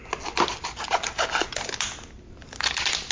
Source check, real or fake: real